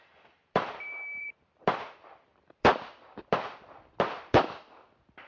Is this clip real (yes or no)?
no